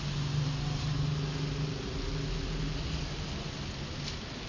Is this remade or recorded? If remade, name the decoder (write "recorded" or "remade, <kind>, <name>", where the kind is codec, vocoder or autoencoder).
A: recorded